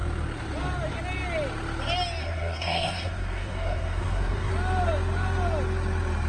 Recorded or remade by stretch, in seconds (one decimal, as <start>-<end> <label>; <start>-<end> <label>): 0.0-2.2 recorded; 2.2-4.5 remade; 4.5-6.3 recorded